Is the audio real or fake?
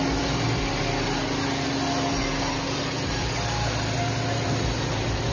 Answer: real